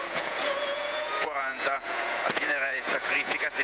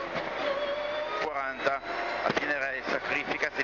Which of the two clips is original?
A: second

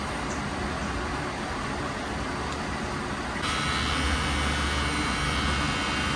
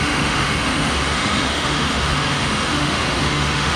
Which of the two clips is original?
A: first